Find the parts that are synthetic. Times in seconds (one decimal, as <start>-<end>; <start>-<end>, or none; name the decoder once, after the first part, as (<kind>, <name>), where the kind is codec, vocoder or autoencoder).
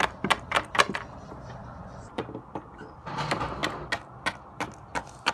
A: 1.6-2.2 (vocoder, Vocos)